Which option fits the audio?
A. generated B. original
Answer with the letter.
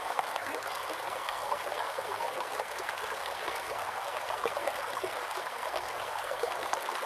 A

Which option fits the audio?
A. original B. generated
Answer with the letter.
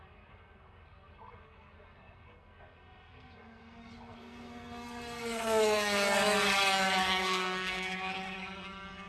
B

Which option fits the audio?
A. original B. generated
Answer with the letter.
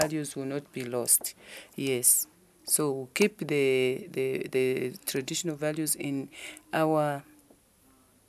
A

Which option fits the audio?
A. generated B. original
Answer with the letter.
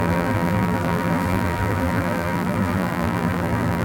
A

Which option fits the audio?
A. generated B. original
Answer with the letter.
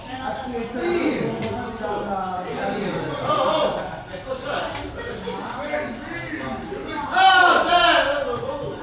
B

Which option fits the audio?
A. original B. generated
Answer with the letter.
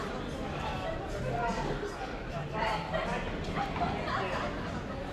A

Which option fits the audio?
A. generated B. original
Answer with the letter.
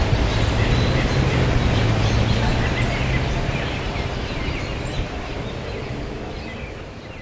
B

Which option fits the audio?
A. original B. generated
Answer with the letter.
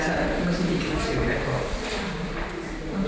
A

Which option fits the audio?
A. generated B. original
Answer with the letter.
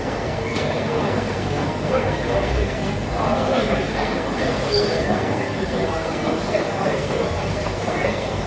A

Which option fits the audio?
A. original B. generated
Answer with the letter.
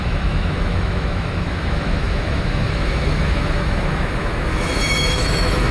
B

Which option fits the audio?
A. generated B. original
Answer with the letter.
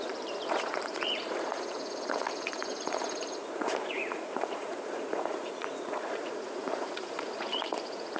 A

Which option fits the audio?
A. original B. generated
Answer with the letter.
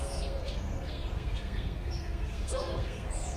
B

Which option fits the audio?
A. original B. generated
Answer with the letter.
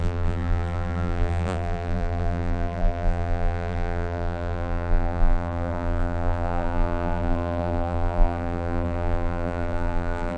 B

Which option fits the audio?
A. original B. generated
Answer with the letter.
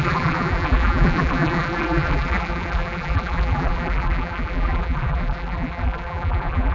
B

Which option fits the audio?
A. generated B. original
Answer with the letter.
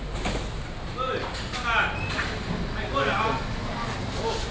B